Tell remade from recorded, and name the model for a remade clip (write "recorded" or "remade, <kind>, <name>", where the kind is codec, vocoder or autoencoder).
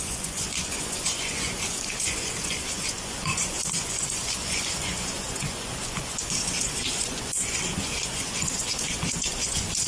remade, vocoder, Vocos